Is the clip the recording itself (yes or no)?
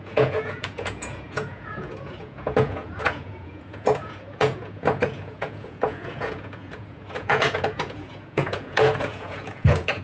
no